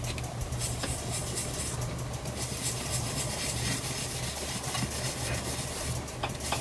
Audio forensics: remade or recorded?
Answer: recorded